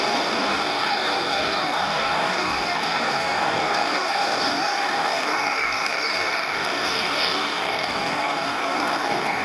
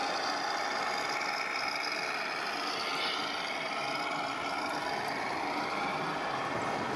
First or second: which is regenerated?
first